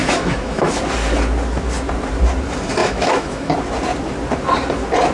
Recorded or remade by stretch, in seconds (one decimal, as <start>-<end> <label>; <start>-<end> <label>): 0.0-0.7 remade; 0.7-2.8 recorded; 2.8-3.5 remade; 3.5-5.1 recorded

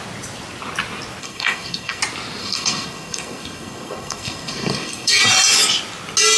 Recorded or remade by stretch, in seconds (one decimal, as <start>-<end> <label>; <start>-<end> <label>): 0.0-1.2 recorded; 1.2-2.0 remade; 2.0-2.4 recorded; 2.4-5.2 remade; 5.2-6.4 recorded

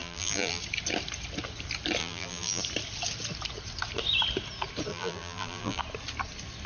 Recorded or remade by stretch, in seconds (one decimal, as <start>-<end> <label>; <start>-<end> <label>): 0.0-0.6 remade; 0.6-2.0 recorded; 2.0-2.6 remade; 2.6-4.9 recorded; 4.9-5.8 remade; 5.8-6.7 recorded